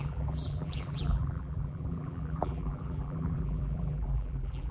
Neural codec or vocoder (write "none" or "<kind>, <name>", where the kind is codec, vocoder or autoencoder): vocoder, BigVGAN v2